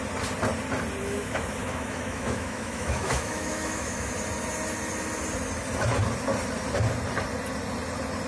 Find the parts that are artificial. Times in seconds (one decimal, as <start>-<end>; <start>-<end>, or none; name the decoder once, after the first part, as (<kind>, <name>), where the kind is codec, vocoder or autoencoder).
1.0-4.1 (autoencoder, DAC-VAE)